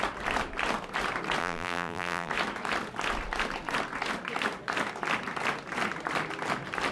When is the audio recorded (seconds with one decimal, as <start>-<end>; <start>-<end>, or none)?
0.0-1.4; 2.3-6.9